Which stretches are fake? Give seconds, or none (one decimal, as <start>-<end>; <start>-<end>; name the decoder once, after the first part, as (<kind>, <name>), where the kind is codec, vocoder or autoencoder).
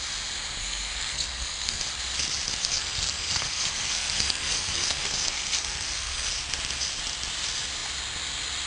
0.6-1.8 (codec, SNAC); 2.6-6.3